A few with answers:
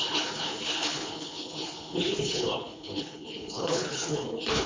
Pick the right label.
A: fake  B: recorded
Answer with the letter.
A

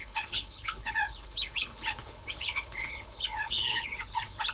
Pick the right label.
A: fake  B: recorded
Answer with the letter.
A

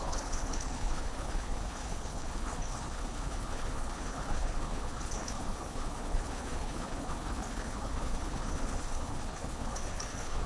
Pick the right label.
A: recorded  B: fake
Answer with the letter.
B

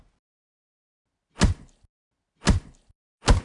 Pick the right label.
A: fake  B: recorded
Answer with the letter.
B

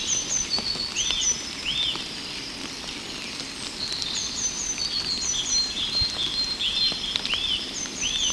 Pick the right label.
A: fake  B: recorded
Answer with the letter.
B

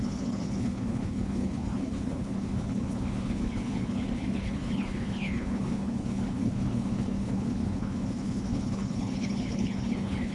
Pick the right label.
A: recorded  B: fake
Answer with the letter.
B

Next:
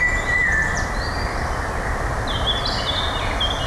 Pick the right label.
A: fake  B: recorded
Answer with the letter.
B